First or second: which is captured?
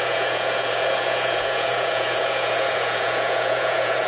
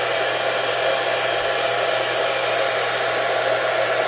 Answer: second